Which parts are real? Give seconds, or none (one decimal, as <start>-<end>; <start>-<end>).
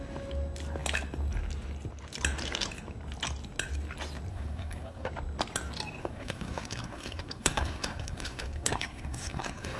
0.0-4.3; 5.1-6.0